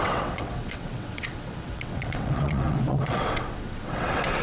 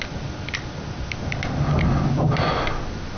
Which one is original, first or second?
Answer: second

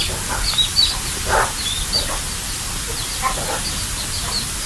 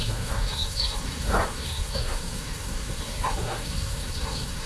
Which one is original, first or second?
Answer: first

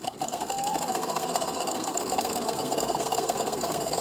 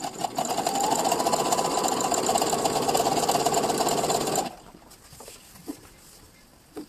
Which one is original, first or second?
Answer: second